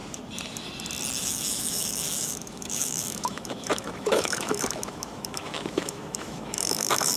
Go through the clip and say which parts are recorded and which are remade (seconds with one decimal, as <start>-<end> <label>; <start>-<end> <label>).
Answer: 0.0-1.2 recorded; 1.2-7.2 remade

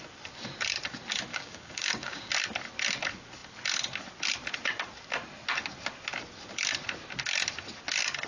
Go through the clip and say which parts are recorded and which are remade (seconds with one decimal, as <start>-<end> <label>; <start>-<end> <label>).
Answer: 0.0-1.3 recorded; 1.3-2.3 remade; 2.3-8.3 recorded

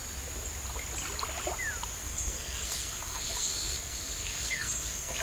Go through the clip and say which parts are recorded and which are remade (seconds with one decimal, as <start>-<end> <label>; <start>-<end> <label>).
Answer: 0.0-2.0 recorded; 2.0-5.2 remade

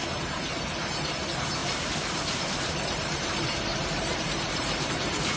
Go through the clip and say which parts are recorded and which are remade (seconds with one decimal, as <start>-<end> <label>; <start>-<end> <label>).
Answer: 0.0-1.6 recorded; 1.6-4.8 remade; 4.8-5.4 recorded

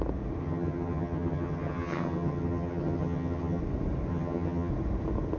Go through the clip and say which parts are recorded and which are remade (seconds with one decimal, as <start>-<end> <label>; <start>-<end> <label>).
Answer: 0.0-0.4 recorded; 0.4-3.6 remade; 3.6-4.1 recorded; 4.1-4.7 remade; 4.7-5.4 recorded

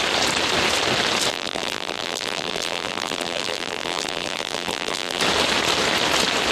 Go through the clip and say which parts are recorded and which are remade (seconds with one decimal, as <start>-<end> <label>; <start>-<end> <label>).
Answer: 0.0-1.3 recorded; 1.3-5.2 remade; 5.2-6.5 recorded

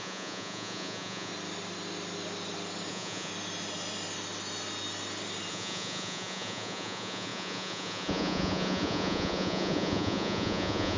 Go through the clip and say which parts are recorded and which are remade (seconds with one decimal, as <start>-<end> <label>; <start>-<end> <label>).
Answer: 0.0-1.3 remade; 1.3-2.9 recorded; 2.9-3.3 remade; 3.3-5.5 recorded; 5.5-11.0 remade